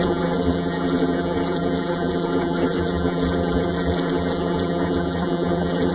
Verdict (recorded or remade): remade